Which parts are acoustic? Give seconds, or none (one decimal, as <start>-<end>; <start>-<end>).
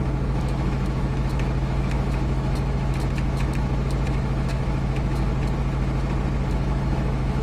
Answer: 5.3-6.5